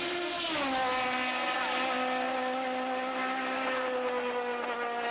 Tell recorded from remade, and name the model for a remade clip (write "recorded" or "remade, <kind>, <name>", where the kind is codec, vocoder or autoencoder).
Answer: recorded